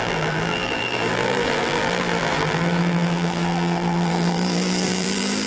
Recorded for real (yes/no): no